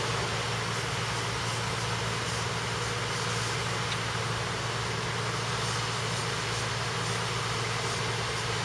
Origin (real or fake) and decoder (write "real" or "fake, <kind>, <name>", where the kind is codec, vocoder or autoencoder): real